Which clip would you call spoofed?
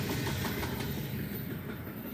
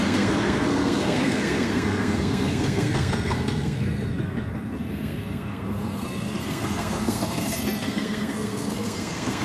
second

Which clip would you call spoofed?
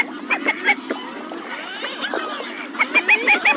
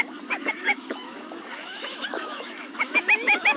second